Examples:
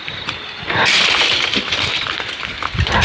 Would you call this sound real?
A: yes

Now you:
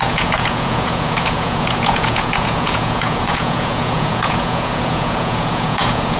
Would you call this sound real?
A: no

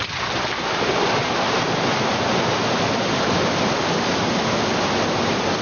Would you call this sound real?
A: yes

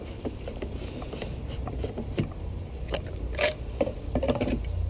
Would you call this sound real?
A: no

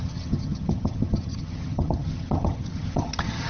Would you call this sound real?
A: no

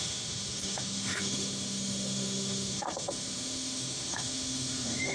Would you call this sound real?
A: no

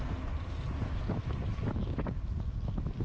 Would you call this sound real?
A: yes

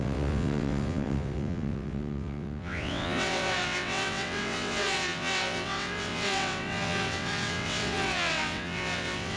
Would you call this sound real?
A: no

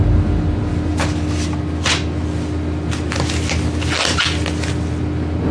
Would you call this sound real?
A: yes